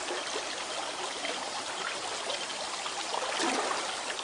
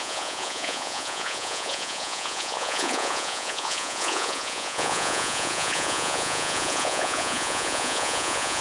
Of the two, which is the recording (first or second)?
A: first